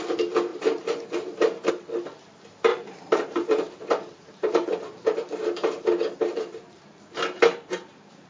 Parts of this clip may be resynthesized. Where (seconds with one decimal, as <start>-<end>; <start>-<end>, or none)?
0.5-1.7; 2.7-7.0